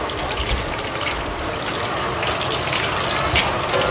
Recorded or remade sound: recorded